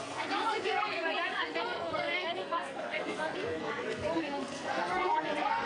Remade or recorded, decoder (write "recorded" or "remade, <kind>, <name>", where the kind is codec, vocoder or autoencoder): remade, codec, SNAC